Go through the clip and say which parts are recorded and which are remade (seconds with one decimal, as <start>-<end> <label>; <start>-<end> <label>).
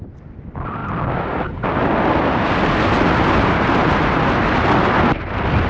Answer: 0.0-5.7 recorded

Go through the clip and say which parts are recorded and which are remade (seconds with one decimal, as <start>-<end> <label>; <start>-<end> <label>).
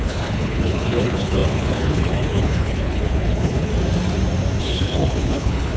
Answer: 0.0-3.7 remade; 3.7-4.6 recorded; 4.6-5.8 remade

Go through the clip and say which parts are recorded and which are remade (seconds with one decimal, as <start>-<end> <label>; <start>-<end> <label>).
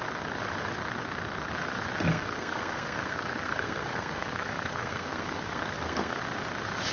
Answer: 0.0-2.1 recorded; 2.1-6.2 remade; 6.2-6.9 recorded